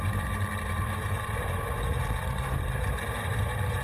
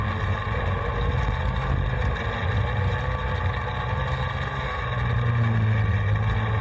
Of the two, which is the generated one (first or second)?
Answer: first